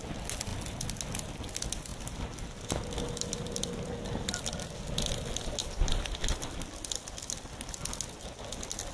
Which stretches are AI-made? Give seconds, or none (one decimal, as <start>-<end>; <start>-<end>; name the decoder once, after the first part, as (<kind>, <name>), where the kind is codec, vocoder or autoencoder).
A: none